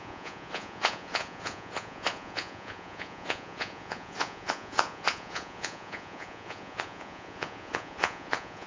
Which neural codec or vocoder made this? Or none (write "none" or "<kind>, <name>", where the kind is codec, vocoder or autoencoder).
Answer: vocoder, Vocos